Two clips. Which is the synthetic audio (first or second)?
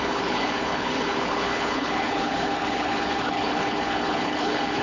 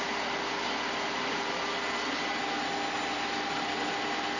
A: first